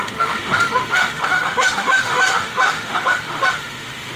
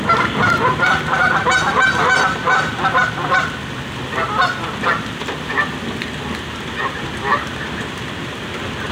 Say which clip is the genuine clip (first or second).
second